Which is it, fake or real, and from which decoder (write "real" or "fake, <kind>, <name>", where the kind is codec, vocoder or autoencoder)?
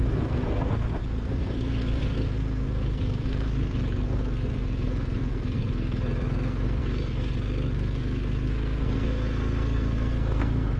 fake, codec, SNAC